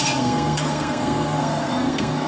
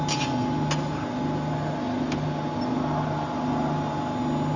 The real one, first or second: second